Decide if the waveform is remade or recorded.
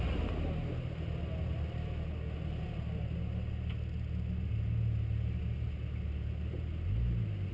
recorded